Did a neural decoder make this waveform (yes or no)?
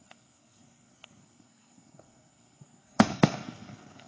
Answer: yes